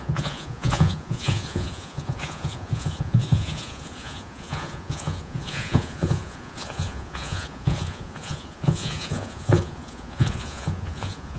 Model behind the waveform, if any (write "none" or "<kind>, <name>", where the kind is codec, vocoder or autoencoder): vocoder, Vocos